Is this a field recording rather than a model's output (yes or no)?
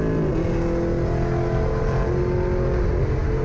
yes